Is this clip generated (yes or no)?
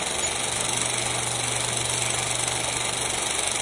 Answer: no